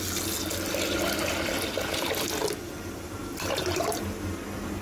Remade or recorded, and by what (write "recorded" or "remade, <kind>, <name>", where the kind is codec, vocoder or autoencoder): recorded